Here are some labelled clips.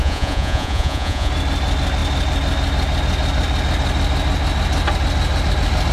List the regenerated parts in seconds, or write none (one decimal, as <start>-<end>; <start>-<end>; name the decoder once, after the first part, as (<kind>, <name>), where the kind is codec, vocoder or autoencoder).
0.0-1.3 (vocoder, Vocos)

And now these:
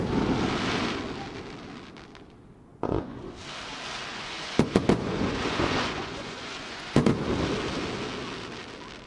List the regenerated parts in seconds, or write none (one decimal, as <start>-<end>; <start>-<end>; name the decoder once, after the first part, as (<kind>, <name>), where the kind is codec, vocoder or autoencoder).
2.7-3.4 (vocoder, Vocos); 4.1-7.3

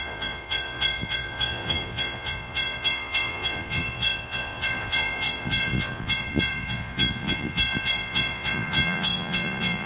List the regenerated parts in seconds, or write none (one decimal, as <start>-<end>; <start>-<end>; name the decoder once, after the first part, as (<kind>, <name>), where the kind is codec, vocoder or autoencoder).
0.0-9.9 (vocoder, Vocos)